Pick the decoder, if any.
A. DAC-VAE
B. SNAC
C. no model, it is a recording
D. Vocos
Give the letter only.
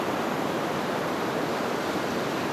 C